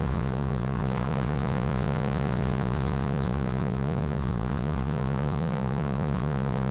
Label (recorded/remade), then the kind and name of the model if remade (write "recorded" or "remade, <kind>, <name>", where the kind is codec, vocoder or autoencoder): remade, vocoder, Vocos